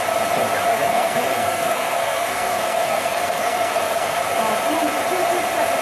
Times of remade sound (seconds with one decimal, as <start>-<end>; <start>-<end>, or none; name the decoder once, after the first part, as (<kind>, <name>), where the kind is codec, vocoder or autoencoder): 0.7-4.2 (codec, SNAC)